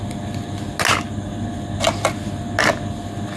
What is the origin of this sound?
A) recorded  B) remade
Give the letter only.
A